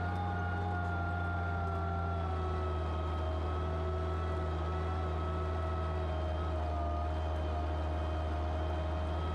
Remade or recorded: recorded